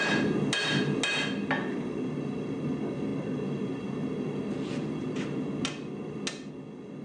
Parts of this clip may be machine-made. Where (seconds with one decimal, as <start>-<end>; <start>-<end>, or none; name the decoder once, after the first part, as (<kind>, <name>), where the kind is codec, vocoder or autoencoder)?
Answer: none